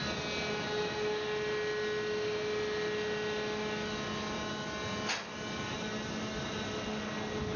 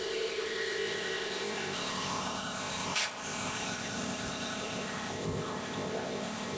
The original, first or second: first